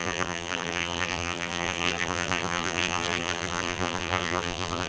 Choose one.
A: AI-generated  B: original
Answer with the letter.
A